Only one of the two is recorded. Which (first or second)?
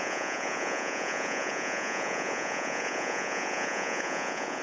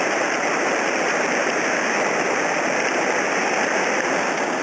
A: second